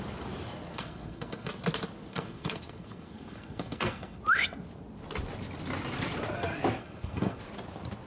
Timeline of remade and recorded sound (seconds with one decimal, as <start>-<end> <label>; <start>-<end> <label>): 0.0-0.7 recorded; 0.7-1.5 remade; 1.5-2.1 recorded; 2.1-4.2 remade; 4.2-6.8 recorded; 6.8-7.4 remade; 7.4-8.1 recorded